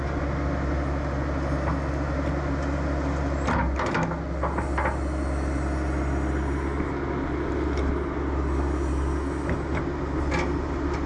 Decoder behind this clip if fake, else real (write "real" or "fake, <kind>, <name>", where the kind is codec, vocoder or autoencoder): real